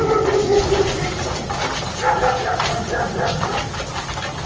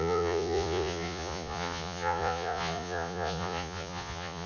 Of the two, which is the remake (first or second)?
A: second